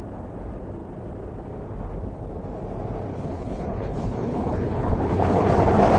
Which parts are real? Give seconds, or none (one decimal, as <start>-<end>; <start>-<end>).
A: 0.0-3.1; 5.5-6.0